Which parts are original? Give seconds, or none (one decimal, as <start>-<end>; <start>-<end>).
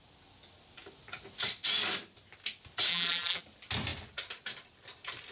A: 0.0-2.9; 3.4-5.3